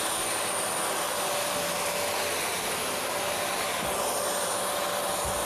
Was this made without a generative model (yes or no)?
yes